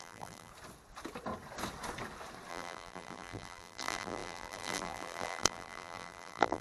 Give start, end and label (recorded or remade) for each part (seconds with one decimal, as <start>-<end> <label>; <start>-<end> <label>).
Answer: 0.0-0.5 remade; 0.5-2.5 recorded; 2.5-6.6 remade